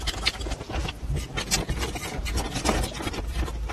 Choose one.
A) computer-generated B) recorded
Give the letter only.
B